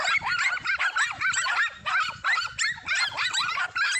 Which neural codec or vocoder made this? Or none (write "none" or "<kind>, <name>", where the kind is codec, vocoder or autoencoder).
none